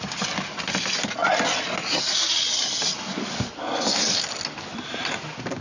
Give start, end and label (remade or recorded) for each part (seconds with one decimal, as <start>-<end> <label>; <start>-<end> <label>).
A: 0.0-5.6 recorded